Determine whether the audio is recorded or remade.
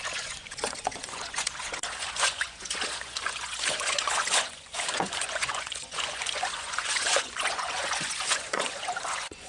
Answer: remade